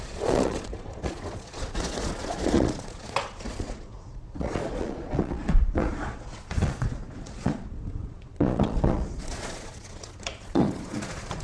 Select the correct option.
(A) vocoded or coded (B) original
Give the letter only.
A